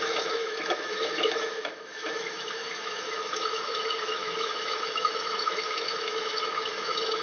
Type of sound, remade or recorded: remade